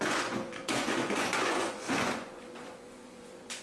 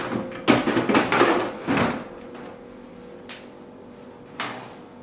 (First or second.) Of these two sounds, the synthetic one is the first